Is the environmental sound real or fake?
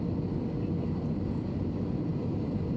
real